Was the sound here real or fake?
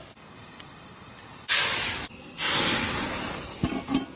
real